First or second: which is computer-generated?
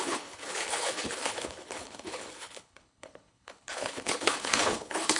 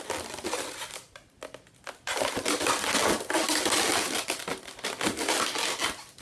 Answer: first